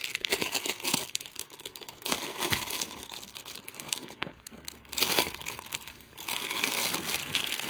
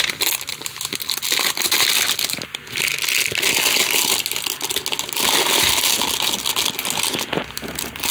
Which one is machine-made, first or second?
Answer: first